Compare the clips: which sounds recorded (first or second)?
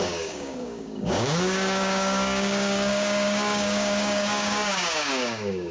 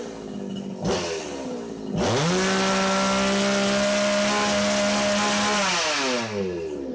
second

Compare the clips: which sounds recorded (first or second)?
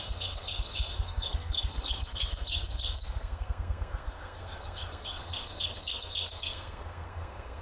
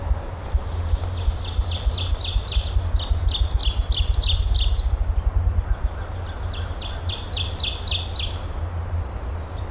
second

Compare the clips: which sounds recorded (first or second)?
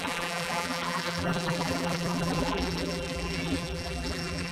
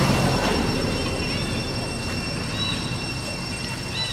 second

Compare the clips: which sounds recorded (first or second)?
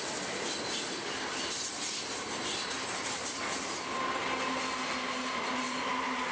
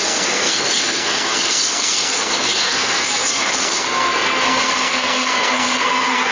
first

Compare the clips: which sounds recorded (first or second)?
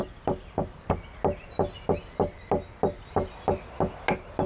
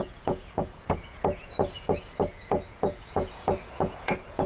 first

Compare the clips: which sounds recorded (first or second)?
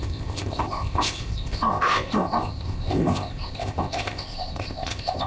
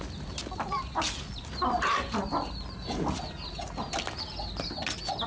second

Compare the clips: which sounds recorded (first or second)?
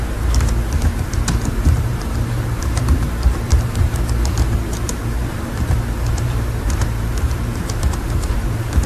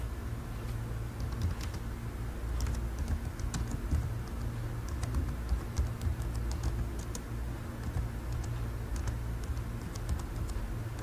second